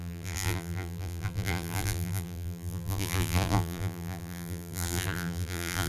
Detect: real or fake fake